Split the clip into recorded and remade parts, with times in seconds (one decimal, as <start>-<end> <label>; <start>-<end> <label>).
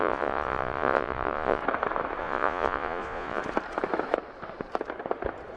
0.0-1.6 remade; 1.6-2.2 recorded; 2.2-3.4 remade; 3.4-5.6 recorded